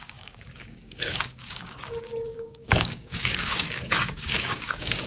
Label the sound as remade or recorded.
remade